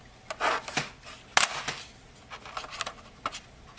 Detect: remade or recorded recorded